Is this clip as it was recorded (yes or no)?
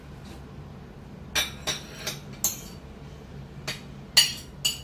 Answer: yes